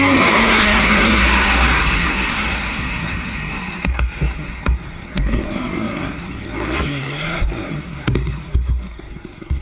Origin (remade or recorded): remade